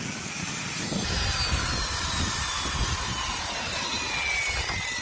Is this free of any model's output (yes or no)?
yes